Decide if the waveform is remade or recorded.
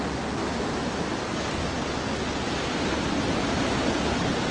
recorded